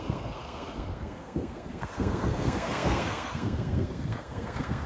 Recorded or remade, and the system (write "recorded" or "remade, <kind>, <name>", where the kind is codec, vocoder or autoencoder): remade, codec, SNAC